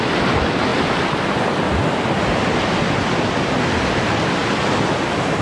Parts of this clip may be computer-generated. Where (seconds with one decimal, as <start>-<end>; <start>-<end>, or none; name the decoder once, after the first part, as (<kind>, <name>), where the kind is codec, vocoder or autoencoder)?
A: none